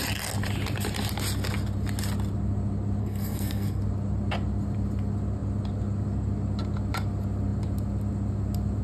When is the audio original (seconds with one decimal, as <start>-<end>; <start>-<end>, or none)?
0.0-3.0; 3.8-8.8